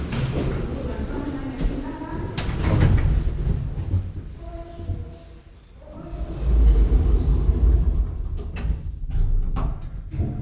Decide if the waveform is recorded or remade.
recorded